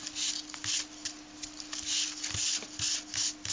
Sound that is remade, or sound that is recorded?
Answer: recorded